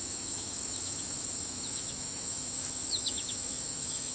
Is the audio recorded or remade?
remade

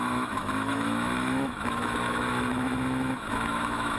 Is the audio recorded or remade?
remade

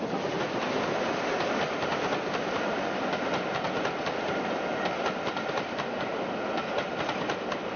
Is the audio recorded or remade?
recorded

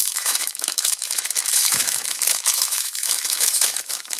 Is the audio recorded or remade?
remade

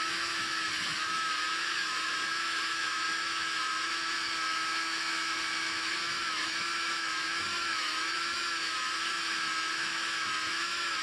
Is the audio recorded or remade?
remade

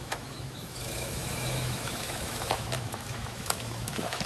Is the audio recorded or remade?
remade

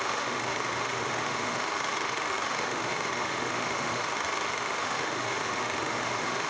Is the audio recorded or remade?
remade